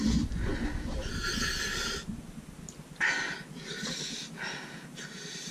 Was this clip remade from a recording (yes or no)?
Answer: no